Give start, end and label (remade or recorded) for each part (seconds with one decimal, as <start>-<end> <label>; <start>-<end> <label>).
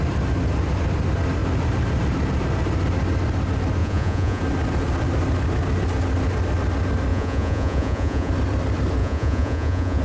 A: 0.0-3.8 recorded; 3.8-4.4 remade; 4.4-7.1 recorded; 7.1-8.3 remade; 8.3-9.0 recorded; 9.0-10.0 remade